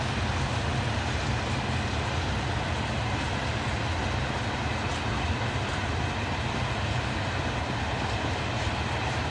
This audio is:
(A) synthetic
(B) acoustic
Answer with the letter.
B